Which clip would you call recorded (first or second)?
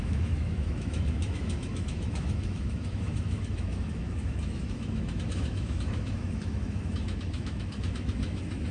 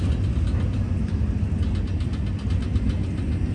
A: second